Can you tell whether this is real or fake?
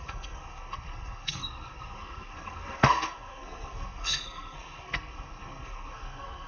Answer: fake